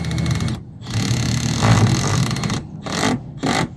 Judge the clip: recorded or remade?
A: recorded